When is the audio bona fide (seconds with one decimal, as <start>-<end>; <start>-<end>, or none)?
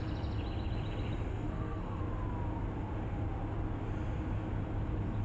0.0-1.3; 2.0-5.2